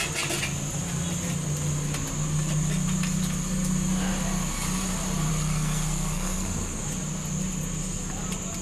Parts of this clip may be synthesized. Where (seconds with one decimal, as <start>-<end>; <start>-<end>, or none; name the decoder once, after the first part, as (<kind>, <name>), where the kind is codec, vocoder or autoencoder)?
5.3-6.8 (codec, SNAC)